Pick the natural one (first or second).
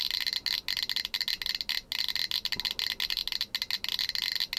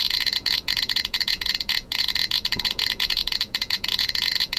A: first